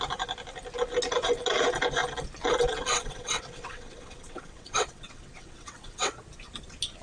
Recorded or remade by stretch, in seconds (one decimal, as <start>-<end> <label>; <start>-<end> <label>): 0.0-2.9 recorded; 2.9-6.2 remade; 6.2-7.0 recorded